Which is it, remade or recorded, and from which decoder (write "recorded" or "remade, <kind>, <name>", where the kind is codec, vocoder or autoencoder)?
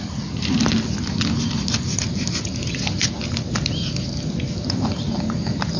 recorded